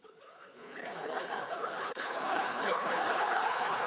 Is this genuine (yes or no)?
no